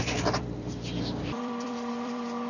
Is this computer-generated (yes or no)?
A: yes